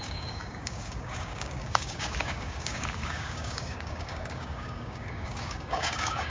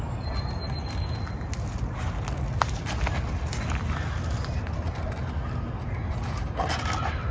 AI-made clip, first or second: first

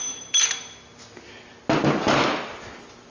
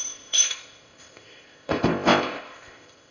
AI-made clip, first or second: second